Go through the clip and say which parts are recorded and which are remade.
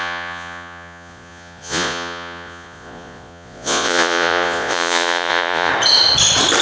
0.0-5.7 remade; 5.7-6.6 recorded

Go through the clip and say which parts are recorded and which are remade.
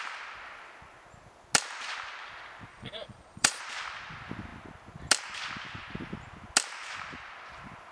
0.0-2.7 recorded; 2.7-3.6 remade; 3.6-7.9 recorded